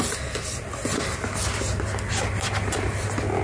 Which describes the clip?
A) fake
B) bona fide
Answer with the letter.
B